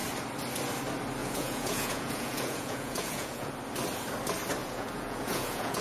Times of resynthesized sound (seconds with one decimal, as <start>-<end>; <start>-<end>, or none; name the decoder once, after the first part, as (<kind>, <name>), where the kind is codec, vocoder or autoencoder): 1.2-3.5 (vocoder, Vocos); 4.6-5.8